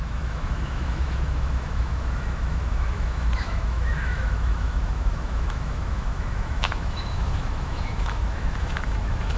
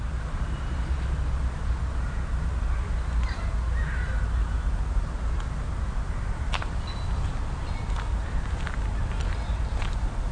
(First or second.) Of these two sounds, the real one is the second